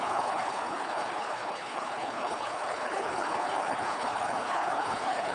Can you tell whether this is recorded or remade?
remade